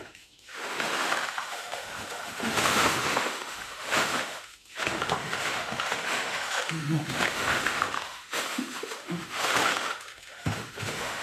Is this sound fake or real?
fake